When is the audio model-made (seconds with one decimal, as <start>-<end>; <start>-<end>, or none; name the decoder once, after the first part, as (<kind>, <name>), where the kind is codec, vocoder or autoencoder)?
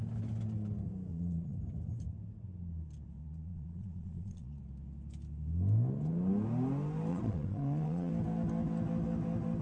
1.1-1.6 (vocoder, Vocos); 3.2-4.6; 7.1-8.1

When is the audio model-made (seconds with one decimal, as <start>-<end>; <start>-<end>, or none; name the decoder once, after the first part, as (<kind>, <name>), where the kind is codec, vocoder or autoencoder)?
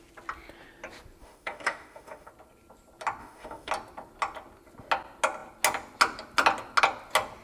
1.2-2.3 (autoencoder, DAC-VAE); 3.2-3.7